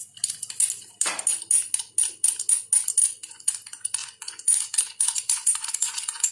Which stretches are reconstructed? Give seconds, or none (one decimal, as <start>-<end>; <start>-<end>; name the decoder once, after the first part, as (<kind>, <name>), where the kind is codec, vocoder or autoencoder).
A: 3.0-3.5 (vocoder, Vocos); 4.0-6.3